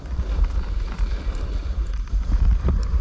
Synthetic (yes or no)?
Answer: no